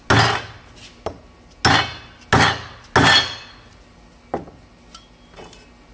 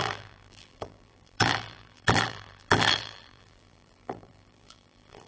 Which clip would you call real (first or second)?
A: first